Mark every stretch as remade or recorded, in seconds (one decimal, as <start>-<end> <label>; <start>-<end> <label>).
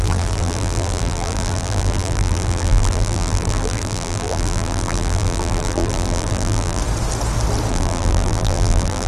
0.0-6.8 remade; 6.8-7.7 recorded; 7.7-9.1 remade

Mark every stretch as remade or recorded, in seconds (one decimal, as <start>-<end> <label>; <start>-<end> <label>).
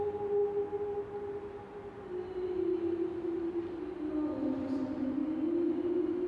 0.0-6.3 recorded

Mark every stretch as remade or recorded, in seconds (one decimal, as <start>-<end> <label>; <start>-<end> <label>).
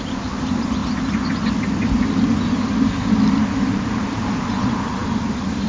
0.0-0.8 remade; 0.8-3.7 recorded; 3.7-5.7 remade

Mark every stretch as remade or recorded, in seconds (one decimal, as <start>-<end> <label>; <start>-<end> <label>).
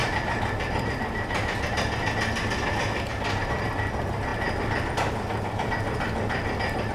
0.0-1.4 remade; 1.4-6.9 recorded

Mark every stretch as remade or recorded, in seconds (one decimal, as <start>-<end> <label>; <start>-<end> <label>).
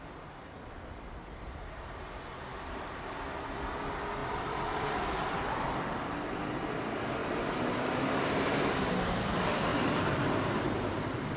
0.0-4.2 recorded; 4.2-5.8 remade; 5.8-7.2 recorded; 7.2-8.3 remade; 8.3-9.7 recorded; 9.7-11.4 remade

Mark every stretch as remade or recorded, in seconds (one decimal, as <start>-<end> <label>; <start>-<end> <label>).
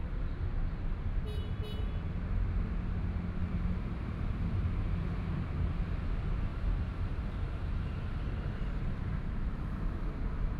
0.0-3.4 recorded; 3.4-5.4 remade; 5.4-6.5 recorded; 6.5-9.1 remade; 9.1-10.6 recorded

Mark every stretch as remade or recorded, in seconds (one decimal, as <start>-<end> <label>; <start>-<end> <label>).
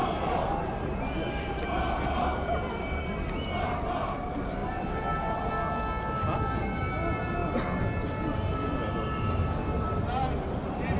0.0-3.1 remade; 3.1-4.6 recorded; 4.6-5.5 remade; 5.5-11.0 recorded